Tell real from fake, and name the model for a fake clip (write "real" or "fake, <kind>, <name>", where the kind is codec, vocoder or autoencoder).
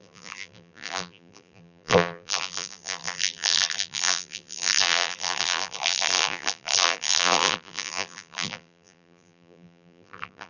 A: fake, vocoder, BigVGAN v2